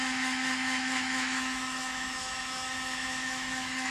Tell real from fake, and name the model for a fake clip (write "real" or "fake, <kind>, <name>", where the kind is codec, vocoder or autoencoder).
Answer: fake, autoencoder, DAC-VAE